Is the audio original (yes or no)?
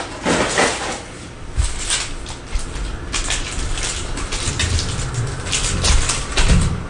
yes